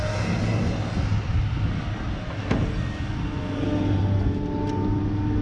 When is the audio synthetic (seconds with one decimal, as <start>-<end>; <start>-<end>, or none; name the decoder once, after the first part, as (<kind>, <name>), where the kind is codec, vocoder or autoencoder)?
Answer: none